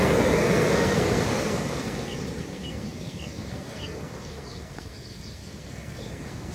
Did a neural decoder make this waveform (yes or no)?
yes